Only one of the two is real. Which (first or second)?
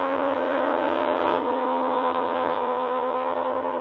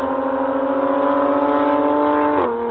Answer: second